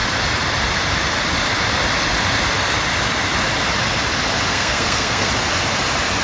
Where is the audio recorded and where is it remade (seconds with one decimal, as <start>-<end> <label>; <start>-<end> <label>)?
0.0-4.5 recorded; 4.5-5.3 remade; 5.3-6.2 recorded